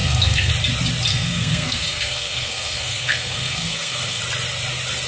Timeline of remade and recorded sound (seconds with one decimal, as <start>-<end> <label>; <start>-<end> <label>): 0.0-0.5 remade; 0.5-1.1 recorded; 1.1-4.2 remade; 4.2-5.1 recorded